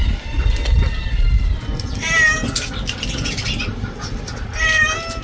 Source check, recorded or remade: recorded